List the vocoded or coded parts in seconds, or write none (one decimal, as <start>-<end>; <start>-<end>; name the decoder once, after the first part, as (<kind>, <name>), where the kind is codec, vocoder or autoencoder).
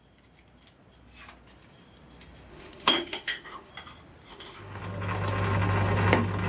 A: 2.5-3.7 (autoencoder, DAC-VAE); 4.3-4.8